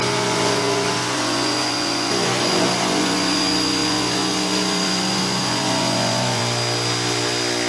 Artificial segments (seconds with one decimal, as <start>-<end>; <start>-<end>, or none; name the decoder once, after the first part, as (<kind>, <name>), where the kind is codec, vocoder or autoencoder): 0.0-6.4 (vocoder, Vocos)